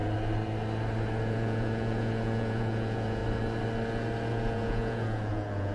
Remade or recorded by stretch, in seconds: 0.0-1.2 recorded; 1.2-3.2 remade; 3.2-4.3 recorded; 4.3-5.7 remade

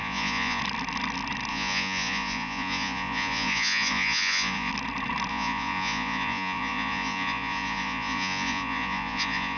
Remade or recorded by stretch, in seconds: 0.0-0.6 remade; 0.6-1.5 recorded; 1.5-4.7 remade; 4.7-5.3 recorded; 5.3-9.6 remade

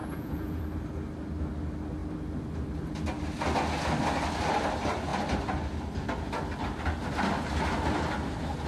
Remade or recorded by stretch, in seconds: 0.0-0.6 remade; 0.6-8.7 recorded

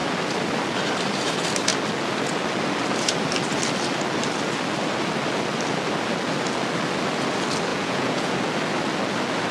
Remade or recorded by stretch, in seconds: 0.0-7.7 recorded; 7.7-8.3 remade; 8.3-9.5 recorded

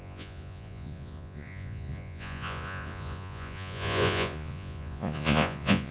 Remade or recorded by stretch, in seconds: 0.0-5.9 remade